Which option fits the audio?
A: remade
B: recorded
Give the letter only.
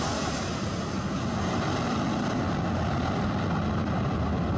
B